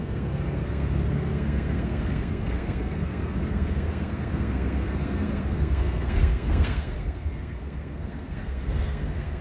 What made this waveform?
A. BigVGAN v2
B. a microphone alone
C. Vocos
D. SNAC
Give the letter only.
D